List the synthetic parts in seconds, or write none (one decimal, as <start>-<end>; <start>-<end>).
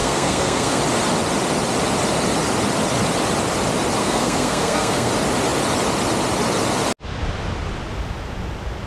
0.0-0.8; 4.0-5.1